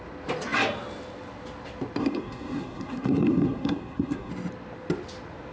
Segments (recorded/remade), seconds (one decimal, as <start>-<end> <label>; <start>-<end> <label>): 0.0-2.0 recorded; 2.0-4.3 remade; 4.3-5.5 recorded